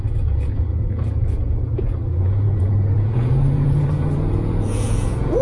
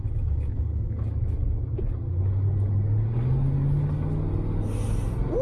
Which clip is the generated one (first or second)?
first